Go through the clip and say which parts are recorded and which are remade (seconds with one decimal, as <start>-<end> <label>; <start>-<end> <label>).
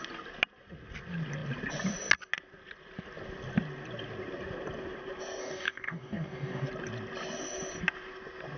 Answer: 0.0-5.4 recorded; 5.4-6.7 remade; 6.7-8.6 recorded